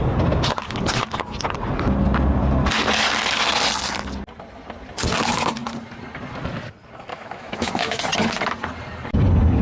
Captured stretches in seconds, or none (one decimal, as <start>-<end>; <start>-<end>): 0.0-7.1; 8.0-9.6